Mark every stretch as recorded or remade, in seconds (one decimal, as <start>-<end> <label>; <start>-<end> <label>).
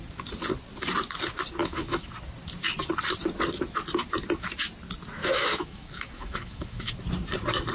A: 0.0-1.6 recorded; 1.6-2.1 remade; 2.1-5.2 recorded; 5.2-6.9 remade; 6.9-7.7 recorded